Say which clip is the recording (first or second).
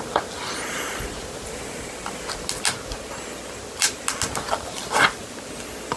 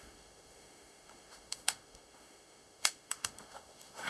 first